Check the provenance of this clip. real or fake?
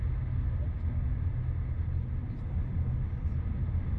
real